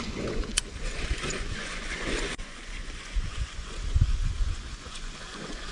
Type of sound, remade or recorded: remade